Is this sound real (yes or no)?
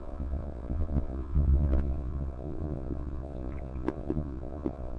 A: no